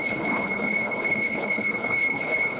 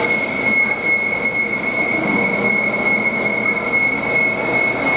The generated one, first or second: first